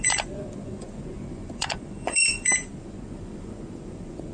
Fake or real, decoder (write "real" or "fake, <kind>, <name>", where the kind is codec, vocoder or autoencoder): fake, vocoder, Vocos